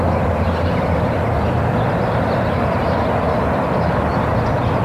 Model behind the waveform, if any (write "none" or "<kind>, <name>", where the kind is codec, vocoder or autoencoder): vocoder, BigVGAN v2